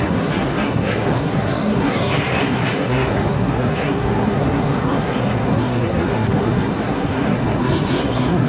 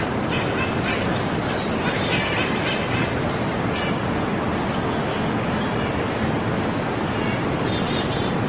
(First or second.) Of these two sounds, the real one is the second